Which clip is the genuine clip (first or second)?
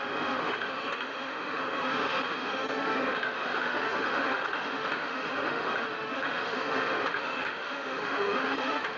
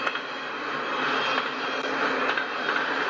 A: second